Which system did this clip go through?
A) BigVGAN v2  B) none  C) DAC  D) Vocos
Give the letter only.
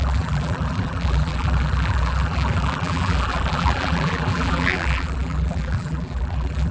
A